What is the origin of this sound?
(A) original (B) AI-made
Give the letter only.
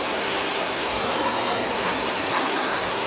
B